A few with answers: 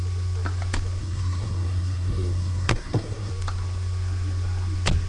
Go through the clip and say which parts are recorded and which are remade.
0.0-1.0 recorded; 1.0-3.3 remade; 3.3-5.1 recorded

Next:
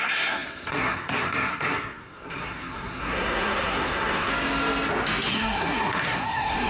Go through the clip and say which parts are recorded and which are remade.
0.0-4.3 remade; 4.3-5.3 recorded; 5.3-6.7 remade

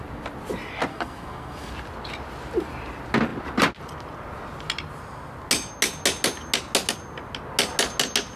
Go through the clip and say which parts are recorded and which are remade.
0.0-0.9 recorded; 0.9-1.7 remade; 1.7-8.4 recorded